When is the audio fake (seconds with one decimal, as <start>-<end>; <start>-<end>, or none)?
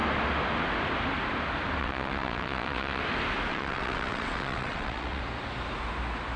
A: 1.8-3.0; 3.5-5.2